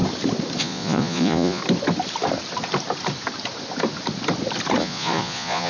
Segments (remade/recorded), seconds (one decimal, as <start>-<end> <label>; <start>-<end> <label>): 0.0-0.6 recorded; 0.6-1.6 remade; 1.6-4.8 recorded; 4.8-5.7 remade